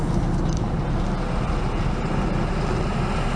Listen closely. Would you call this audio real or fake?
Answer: real